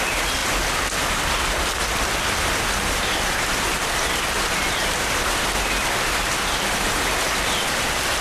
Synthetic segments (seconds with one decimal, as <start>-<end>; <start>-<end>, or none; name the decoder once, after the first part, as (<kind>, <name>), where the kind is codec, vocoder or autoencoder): none